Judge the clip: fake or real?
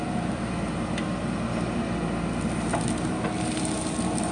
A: real